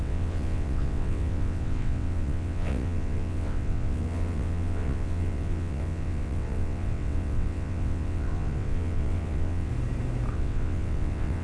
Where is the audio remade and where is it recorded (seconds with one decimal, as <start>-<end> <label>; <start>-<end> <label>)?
0.0-9.7 remade; 9.7-10.3 recorded; 10.3-11.4 remade